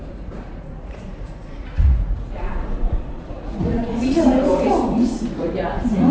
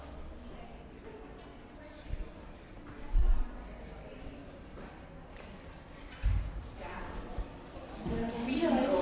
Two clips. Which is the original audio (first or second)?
second